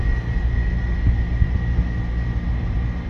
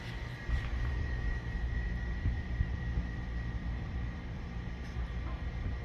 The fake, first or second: second